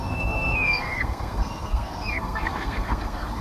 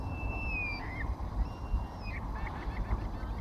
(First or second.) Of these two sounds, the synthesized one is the first